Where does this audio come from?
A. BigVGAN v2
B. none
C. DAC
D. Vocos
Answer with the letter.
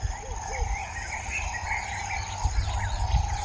B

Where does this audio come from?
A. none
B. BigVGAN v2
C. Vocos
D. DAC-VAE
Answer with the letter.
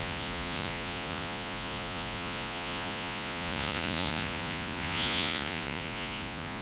C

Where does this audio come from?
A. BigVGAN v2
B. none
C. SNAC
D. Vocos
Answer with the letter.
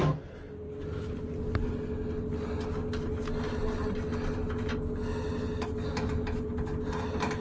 B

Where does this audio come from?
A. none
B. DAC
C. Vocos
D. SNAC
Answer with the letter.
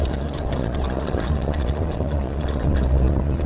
C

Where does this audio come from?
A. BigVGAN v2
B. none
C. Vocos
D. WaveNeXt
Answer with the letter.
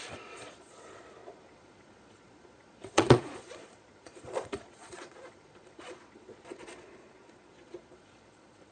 C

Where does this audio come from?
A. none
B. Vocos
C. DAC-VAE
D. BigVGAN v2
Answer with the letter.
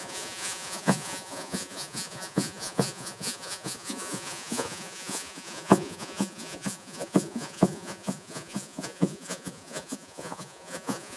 B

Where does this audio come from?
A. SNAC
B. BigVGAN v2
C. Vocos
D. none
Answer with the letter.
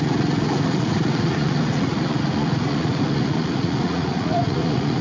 C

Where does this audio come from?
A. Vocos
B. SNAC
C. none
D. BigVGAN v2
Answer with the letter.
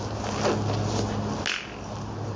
C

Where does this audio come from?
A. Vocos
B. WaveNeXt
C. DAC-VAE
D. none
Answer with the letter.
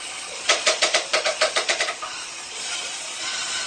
A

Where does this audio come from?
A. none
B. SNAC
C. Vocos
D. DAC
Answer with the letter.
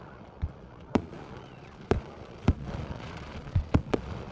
C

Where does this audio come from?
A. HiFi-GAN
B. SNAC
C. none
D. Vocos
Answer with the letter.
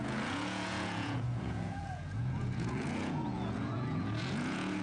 D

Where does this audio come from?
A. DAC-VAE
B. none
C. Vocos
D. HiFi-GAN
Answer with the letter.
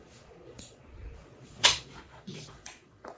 C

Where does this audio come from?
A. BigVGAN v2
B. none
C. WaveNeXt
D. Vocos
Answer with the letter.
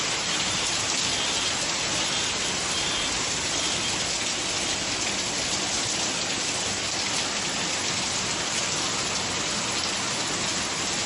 B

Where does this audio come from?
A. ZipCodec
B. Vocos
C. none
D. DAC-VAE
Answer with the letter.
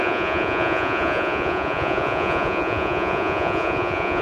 B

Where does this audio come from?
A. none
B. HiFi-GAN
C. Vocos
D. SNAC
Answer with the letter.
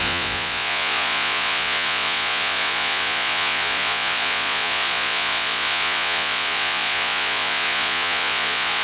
C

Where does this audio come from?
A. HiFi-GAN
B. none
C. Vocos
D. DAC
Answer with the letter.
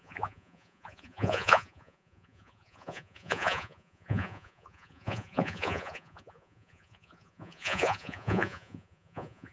C